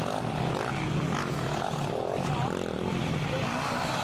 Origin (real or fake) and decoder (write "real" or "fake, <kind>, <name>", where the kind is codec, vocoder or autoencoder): real